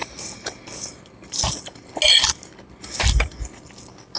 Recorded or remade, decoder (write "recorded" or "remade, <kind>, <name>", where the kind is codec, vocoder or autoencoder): recorded